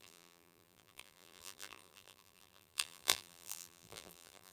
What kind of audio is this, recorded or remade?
remade